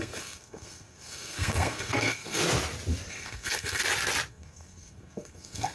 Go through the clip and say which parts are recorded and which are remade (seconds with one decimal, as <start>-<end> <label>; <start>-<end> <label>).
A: 0.0-2.4 remade; 2.4-3.1 recorded; 3.1-3.8 remade; 3.8-4.3 recorded; 4.3-5.7 remade